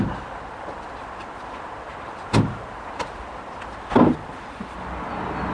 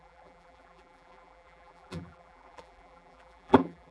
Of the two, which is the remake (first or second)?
second